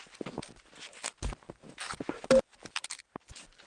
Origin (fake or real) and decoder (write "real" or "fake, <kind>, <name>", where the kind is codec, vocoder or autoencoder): real